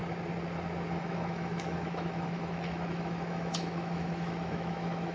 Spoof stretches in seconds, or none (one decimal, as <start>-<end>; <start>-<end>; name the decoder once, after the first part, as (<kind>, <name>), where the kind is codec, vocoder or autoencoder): 0.9-5.1 (autoencoder, DAC-VAE)